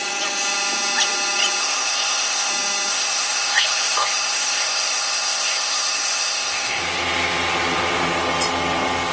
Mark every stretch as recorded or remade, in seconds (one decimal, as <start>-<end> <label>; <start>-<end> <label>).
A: 0.0-1.6 recorded; 1.6-2.5 remade; 2.5-2.9 recorded; 2.9-6.8 remade; 6.8-9.1 recorded